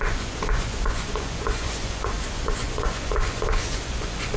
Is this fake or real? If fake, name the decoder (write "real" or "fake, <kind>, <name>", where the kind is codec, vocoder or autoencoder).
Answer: fake, vocoder, Vocos